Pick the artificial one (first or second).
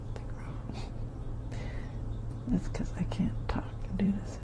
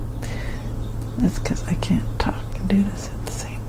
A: first